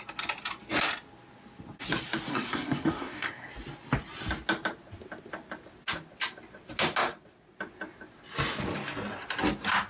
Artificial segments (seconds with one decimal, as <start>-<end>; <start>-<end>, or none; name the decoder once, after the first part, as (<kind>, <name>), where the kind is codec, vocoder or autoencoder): 2.3-3.5 (codec, SNAC)